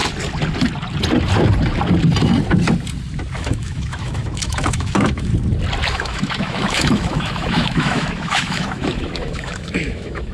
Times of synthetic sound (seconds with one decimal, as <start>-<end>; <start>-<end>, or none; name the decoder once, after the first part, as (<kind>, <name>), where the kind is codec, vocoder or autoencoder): 3.4-5.3 (autoencoder, DAC-VAE); 5.9-10.3